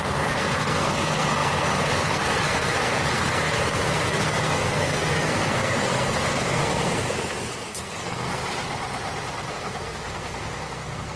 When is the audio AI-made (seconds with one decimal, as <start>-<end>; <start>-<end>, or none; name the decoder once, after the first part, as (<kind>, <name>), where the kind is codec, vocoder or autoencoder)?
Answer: 0.0-8.4 (codec, SNAC); 9.5-11.2